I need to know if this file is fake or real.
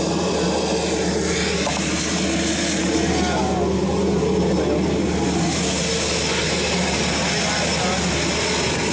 real